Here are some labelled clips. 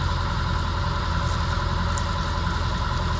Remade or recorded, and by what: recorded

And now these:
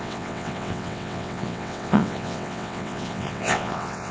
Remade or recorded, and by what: remade, vocoder, WaveNeXt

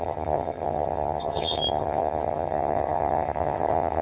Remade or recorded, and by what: remade, vocoder, HiFi-GAN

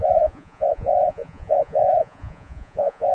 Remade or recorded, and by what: remade, vocoder, Vocos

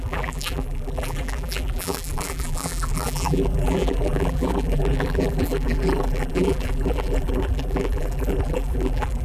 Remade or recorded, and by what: remade, vocoder, BigVGAN v2